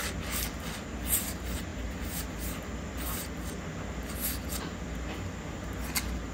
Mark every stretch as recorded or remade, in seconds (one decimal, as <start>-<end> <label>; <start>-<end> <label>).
0.0-6.3 recorded